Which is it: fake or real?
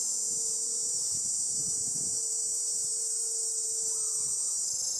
real